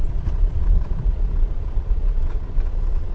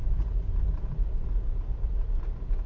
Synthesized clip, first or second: first